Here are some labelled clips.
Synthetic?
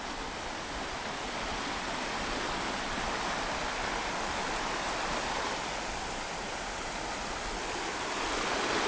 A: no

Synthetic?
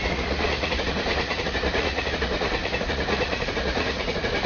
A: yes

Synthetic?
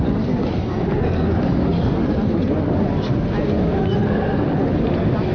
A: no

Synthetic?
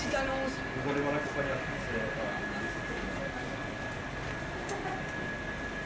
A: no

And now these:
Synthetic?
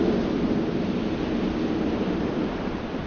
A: no